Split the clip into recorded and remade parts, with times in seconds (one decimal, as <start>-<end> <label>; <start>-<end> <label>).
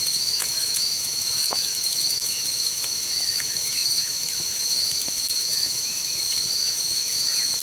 0.0-7.6 remade